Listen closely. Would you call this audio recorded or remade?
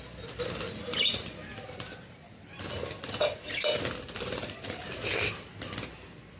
recorded